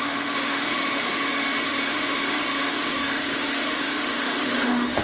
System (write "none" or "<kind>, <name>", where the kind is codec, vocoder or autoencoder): autoencoder, DAC-VAE